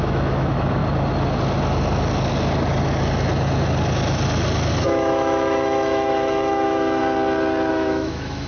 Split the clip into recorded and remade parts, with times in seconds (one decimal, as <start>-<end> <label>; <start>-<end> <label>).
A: 0.0-0.8 remade; 0.8-4.8 recorded; 4.8-7.0 remade; 7.0-7.7 recorded; 7.7-8.5 remade